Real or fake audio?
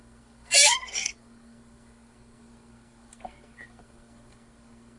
fake